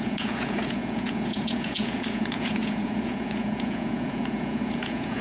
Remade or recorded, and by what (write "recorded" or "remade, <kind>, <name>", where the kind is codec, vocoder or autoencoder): remade, vocoder, Vocos